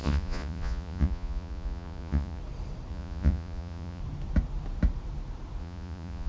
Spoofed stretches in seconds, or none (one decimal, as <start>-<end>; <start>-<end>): 0.0-2.4; 2.9-4.0; 5.6-6.3